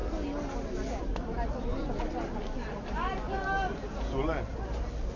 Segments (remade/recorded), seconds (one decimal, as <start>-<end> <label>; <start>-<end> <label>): 0.0-1.0 recorded; 1.0-1.7 remade; 1.7-4.8 recorded; 4.8-5.2 remade